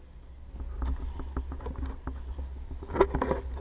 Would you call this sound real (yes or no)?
yes